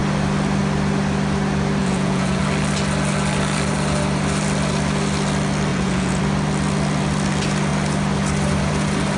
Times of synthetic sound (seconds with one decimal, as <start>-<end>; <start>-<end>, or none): 1.8-2.4; 5.7-6.2